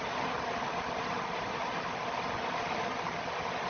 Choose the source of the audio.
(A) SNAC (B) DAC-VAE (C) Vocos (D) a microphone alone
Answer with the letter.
D